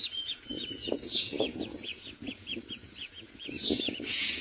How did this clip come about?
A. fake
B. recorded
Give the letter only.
A